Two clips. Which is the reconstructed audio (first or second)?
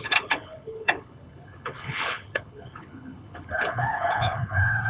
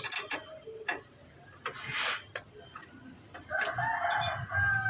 first